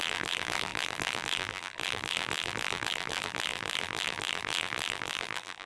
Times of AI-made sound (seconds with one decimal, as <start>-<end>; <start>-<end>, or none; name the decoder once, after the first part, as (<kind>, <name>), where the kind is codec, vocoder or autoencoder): 0.0-5.7 (vocoder, BigVGAN v2)